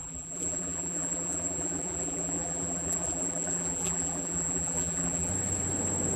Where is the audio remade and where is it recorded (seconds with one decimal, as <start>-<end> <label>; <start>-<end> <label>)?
0.0-5.3 remade; 5.3-6.2 recorded